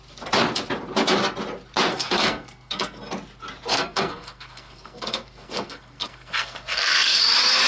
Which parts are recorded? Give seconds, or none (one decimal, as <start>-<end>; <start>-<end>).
0.0-1.9; 3.0-3.7; 7.2-7.7